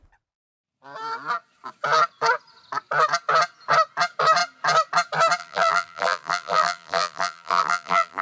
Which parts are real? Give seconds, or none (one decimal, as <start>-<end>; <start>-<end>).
0.0-5.4